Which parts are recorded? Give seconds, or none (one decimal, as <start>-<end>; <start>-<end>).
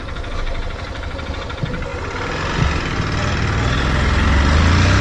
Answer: 0.0-5.0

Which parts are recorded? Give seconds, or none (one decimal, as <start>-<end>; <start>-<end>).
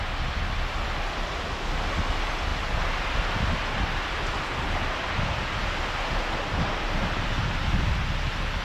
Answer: 0.0-8.6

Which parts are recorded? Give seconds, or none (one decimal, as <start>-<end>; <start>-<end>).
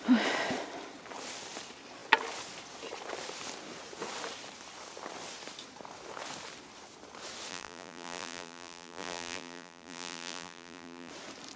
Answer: 0.0-7.5; 11.1-11.6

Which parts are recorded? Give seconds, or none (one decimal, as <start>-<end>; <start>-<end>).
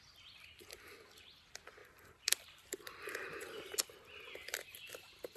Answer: 0.0-5.4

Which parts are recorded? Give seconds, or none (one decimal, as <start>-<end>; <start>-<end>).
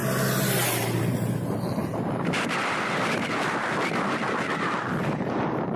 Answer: 0.0-5.8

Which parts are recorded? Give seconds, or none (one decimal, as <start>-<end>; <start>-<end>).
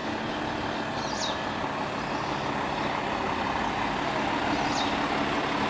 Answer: 0.0-5.7